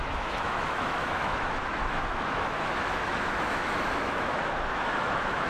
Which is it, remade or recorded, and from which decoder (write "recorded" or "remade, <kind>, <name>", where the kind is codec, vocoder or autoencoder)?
remade, autoencoder, DAC-VAE